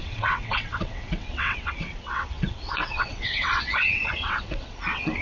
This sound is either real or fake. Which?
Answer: fake